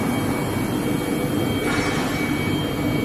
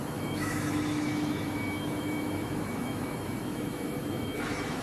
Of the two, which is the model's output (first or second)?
second